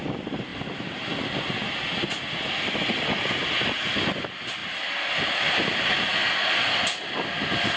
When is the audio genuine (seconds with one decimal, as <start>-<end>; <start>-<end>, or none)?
0.0-7.8